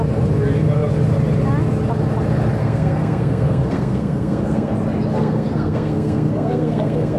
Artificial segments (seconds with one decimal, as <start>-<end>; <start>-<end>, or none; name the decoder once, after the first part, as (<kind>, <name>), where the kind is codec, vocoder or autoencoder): 2.6-4.7 (codec, SNAC); 5.2-7.2